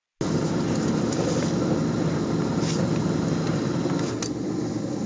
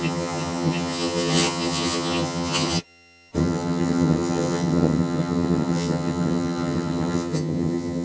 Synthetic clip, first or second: second